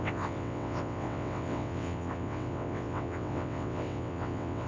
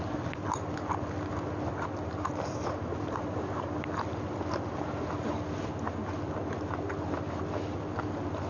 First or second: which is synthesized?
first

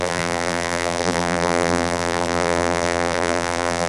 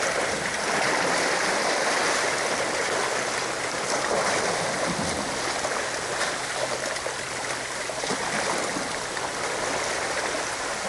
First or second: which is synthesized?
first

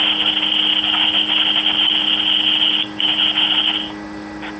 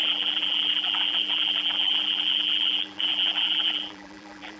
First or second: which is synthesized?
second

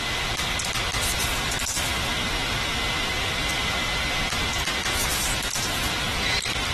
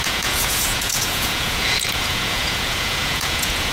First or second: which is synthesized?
second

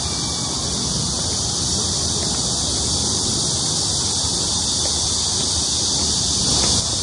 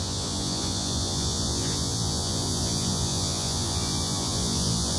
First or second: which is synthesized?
second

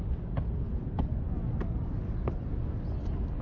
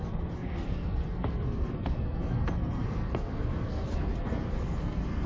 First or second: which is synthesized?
second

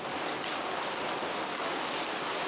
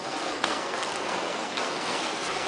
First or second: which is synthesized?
second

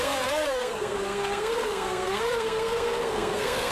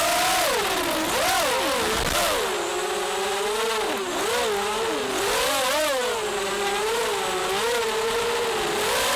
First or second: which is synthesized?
first